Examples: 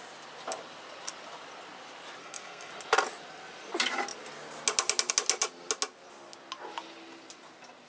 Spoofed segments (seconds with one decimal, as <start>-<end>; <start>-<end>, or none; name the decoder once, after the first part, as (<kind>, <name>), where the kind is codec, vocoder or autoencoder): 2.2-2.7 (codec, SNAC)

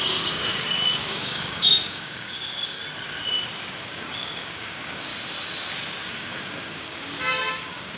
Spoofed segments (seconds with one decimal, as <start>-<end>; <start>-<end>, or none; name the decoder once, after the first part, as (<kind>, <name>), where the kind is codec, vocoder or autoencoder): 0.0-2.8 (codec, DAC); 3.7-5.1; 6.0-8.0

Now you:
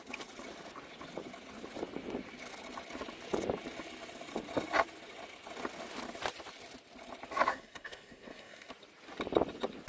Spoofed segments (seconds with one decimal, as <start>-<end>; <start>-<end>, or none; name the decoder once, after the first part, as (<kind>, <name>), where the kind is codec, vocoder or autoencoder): 7.5-8.7 (codec, SNAC)